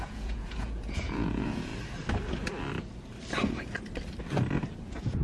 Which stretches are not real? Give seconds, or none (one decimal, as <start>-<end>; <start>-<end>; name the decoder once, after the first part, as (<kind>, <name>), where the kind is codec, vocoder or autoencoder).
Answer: 0.0-1.7 (vocoder, Vocos); 4.8-5.2